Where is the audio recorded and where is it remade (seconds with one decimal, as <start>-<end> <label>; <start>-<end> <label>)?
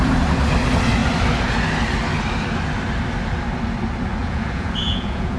0.0-4.2 recorded; 4.2-5.4 remade